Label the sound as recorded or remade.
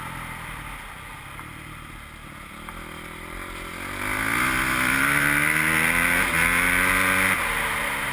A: recorded